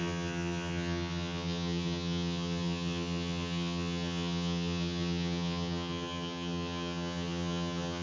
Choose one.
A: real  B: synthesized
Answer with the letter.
B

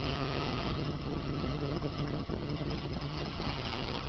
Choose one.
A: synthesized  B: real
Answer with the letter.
A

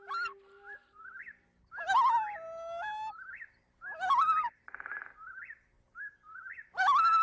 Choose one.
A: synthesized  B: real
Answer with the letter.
B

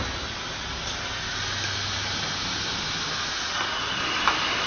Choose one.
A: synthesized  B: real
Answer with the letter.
B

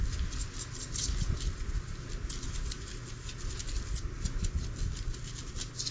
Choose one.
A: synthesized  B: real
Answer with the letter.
B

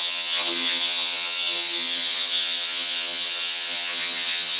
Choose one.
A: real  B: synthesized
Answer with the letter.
B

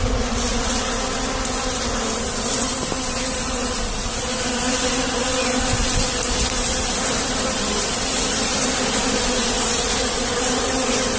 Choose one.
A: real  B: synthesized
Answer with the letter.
A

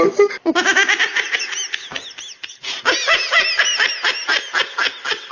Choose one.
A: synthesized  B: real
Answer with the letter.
B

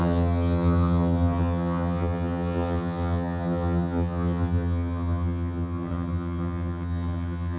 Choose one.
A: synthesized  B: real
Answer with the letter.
A